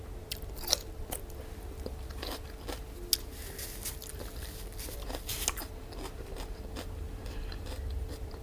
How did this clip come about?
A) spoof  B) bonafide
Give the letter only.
B